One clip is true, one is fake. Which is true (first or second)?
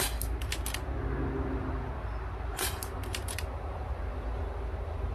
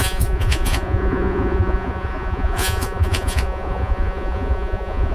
first